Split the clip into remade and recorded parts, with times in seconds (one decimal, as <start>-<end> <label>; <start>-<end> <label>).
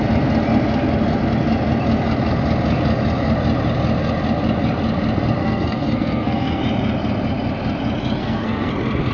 0.0-5.4 recorded; 5.4-6.6 remade; 6.6-8.2 recorded; 8.2-8.7 remade; 8.7-9.1 recorded